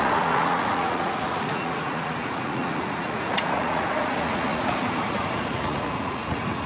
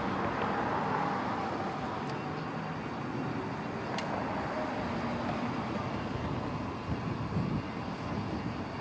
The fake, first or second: first